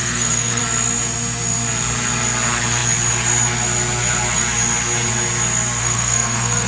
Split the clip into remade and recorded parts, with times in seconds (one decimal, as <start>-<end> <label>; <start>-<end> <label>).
0.0-0.6 remade; 0.6-5.8 recorded; 5.8-6.7 remade